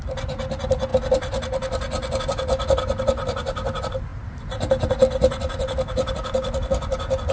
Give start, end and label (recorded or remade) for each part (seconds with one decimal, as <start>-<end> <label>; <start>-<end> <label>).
0.0-7.3 recorded